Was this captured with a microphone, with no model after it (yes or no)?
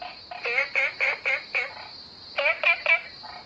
yes